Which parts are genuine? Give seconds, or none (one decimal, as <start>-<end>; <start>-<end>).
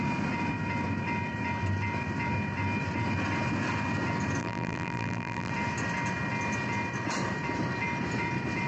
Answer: 0.0-4.4; 5.5-8.7